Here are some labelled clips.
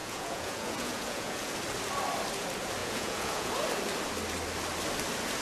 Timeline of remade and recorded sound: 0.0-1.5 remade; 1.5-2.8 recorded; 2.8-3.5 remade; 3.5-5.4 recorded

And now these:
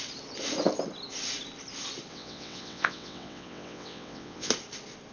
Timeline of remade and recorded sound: 0.0-2.1 recorded; 2.1-4.5 remade; 4.5-5.1 recorded

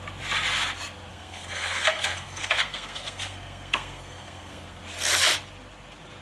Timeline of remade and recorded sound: 0.0-1.1 recorded; 1.1-4.8 remade; 4.8-6.2 recorded

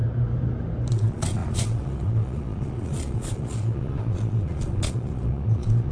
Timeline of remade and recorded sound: 0.0-0.9 recorded; 0.9-5.9 remade